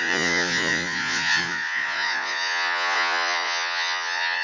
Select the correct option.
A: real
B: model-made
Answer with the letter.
B